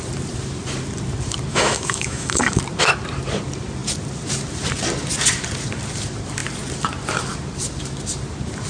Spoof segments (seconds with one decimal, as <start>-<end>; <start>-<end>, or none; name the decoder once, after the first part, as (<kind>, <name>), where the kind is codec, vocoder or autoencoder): 1.5-2.6 (autoencoder, DAC-VAE)